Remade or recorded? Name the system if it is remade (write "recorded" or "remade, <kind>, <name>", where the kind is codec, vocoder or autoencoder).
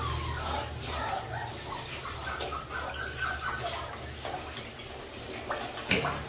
recorded